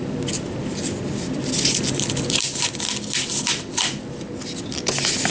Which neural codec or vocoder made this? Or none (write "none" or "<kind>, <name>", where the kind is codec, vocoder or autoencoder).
none